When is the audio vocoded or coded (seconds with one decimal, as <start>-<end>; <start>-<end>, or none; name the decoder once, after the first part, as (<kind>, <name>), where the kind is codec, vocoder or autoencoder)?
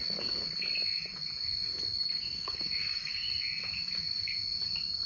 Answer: 1.9-3.3 (codec, DAC)